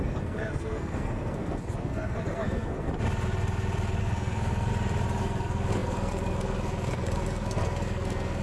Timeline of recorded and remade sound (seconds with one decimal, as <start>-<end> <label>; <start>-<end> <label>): 0.0-2.9 remade; 2.9-4.0 recorded; 4.0-4.7 remade; 4.7-5.2 recorded; 5.2-8.4 remade